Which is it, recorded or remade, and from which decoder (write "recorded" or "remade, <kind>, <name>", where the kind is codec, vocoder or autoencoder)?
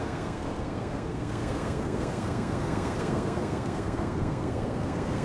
remade, codec, SNAC